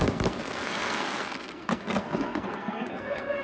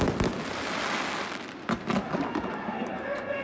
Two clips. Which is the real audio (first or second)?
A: second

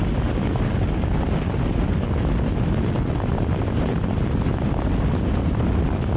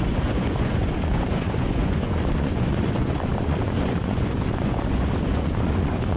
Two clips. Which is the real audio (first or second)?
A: first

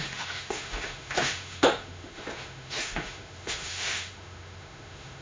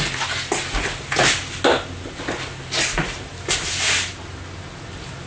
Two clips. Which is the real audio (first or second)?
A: second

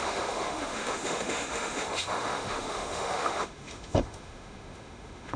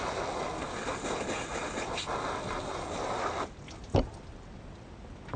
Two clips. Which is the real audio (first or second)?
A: second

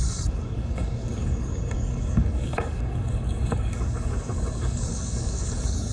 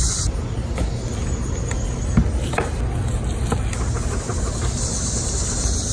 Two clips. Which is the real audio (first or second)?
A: second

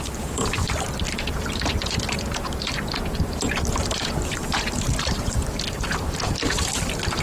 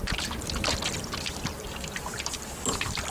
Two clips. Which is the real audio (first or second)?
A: second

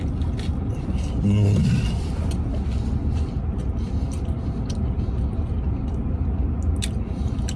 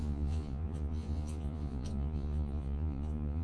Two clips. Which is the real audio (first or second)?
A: first